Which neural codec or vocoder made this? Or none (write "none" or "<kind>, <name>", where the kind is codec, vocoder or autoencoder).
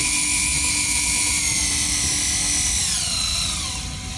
none